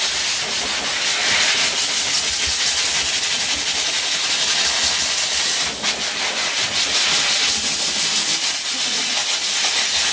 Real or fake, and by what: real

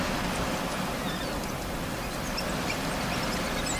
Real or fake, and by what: real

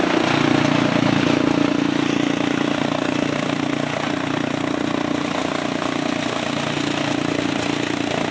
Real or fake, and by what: real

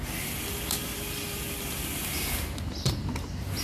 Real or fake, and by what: real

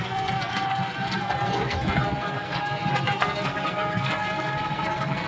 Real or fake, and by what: fake, codec, SNAC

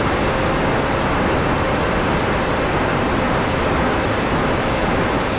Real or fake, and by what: real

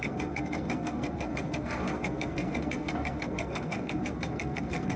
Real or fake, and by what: fake, codec, SNAC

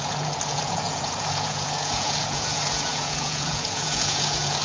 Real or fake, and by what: fake, vocoder, Vocos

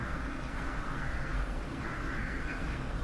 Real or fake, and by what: fake, codec, SNAC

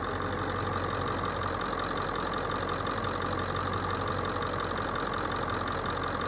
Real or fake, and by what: real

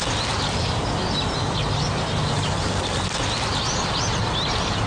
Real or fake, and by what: real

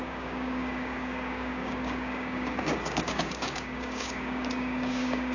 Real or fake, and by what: fake, codec, DAC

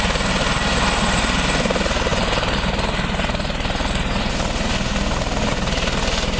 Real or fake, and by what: real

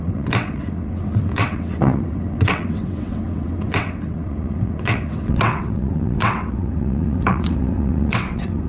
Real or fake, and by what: fake, vocoder, WaveNeXt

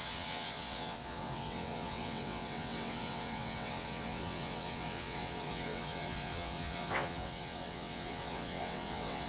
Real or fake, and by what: fake, vocoder, WaveNeXt